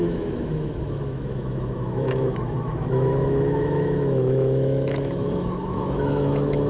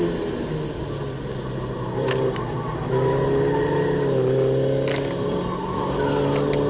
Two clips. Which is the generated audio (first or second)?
first